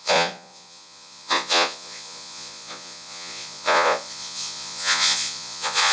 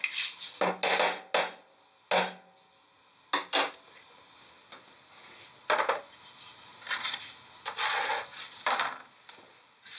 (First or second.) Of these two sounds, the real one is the second